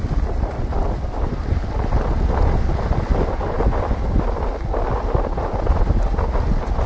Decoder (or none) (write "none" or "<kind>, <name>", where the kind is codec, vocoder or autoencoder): none